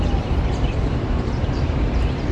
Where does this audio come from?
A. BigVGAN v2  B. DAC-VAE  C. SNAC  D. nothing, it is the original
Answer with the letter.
D